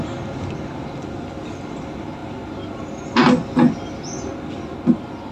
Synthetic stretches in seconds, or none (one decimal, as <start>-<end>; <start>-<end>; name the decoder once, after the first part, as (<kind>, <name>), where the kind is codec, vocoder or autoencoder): none